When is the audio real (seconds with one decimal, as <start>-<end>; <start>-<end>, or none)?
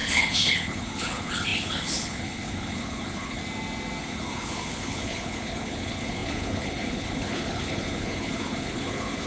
3.4-4.0